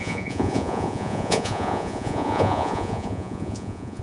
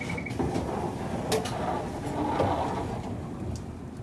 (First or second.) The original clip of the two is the second